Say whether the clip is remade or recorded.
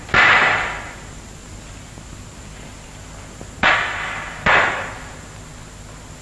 recorded